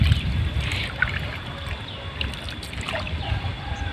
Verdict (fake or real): real